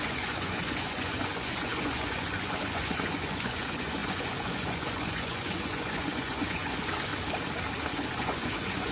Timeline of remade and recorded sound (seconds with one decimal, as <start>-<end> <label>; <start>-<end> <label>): 0.0-7.1 remade; 7.1-8.1 recorded; 8.1-8.9 remade